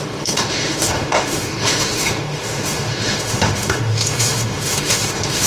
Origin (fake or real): fake